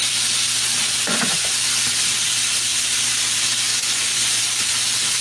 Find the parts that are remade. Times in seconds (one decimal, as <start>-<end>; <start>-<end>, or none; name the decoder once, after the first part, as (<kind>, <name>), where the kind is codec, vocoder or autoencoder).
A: 0.8-1.5 (vocoder, Vocos); 3.7-4.4

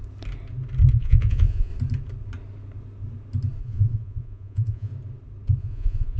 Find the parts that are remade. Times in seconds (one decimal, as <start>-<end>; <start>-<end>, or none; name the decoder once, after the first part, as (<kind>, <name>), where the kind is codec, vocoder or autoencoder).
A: 0.9-1.7 (vocoder, Vocos); 3.6-4.9; 5.6-6.2

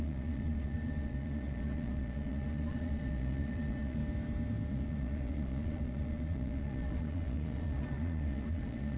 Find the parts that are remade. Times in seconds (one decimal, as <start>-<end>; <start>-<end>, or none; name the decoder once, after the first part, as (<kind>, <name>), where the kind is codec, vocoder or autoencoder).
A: 0.0-4.0 (vocoder, Vocos); 4.7-9.0

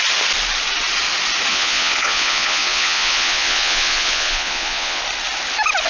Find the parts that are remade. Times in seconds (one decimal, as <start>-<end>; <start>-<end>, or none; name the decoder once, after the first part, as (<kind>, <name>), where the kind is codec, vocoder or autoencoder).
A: 1.5-5.0 (vocoder, Vocos)

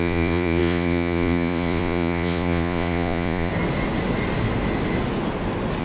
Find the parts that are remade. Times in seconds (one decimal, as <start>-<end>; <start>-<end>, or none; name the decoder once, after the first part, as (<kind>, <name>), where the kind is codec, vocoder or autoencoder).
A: 0.0-3.5 (vocoder, Vocos)

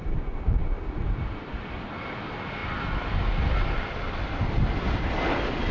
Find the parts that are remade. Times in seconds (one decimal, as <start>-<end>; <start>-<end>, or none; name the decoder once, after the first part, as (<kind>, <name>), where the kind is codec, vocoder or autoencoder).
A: none